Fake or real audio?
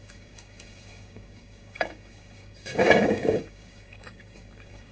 fake